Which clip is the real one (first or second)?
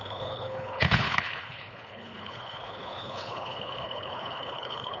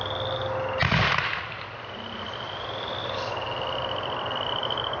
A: second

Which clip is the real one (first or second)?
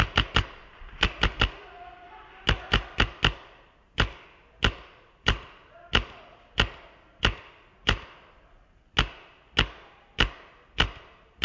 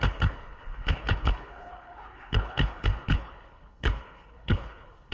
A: first